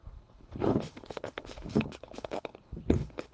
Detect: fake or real fake